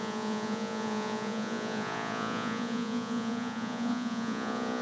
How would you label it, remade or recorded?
remade